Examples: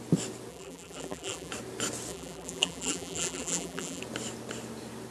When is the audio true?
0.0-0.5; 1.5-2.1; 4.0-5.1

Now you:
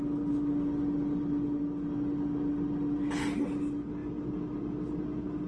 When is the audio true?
0.0-5.5

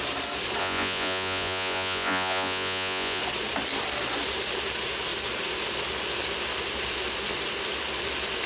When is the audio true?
0.0-0.6; 3.2-8.5

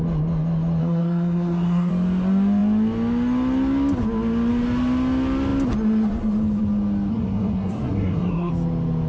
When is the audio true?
0.0-0.8; 1.9-7.1; 8.5-9.1

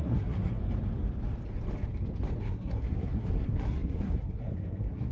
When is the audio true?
0.6-2.4

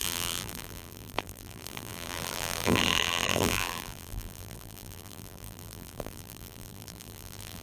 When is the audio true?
none

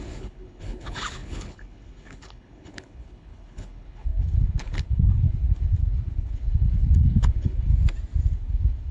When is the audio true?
7.7-8.3